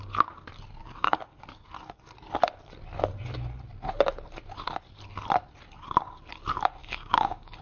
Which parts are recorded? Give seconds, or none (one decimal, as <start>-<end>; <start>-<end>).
0.0-0.8; 1.4-6.8